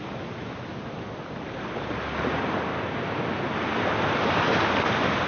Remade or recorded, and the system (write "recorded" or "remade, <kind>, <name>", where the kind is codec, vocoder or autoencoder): recorded